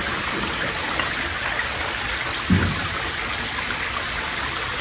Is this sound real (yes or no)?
yes